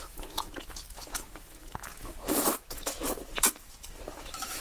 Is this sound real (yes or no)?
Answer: no